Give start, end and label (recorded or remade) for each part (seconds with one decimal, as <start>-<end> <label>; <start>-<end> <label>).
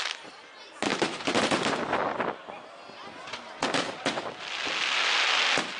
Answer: 0.0-5.8 recorded